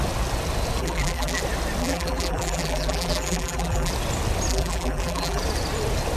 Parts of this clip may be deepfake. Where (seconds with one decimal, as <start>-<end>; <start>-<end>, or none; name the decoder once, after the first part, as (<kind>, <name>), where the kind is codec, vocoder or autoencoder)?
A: 0.8-1.4 (vocoder, BigVGAN v2); 1.8-3.9; 4.5-5.4